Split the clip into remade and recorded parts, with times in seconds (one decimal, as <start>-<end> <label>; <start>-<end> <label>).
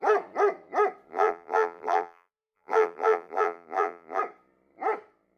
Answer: 0.0-1.1 recorded; 1.1-4.2 remade; 4.2-5.4 recorded